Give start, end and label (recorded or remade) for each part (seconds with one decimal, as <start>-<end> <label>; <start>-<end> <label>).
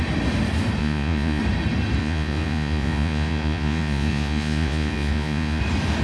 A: 0.0-0.8 recorded; 0.8-1.4 remade; 1.4-2.0 recorded; 2.0-5.6 remade; 5.6-6.0 recorded